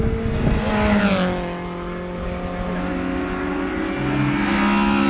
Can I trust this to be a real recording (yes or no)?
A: yes